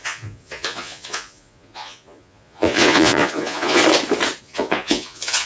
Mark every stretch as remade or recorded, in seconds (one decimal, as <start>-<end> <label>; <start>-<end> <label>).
0.0-3.8 remade; 3.8-4.4 recorded; 4.4-5.5 remade